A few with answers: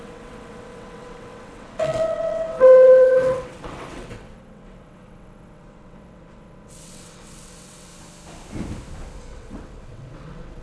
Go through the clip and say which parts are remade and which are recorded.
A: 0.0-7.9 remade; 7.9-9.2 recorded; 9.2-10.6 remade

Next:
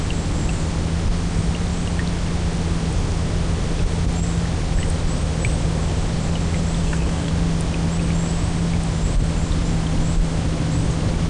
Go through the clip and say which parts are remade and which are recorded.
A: 0.0-6.8 recorded; 6.8-7.3 remade; 7.3-11.3 recorded

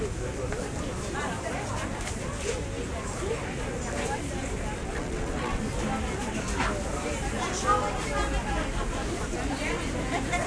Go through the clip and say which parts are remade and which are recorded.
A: 0.0-4.8 recorded; 4.8-5.6 remade; 5.6-10.5 recorded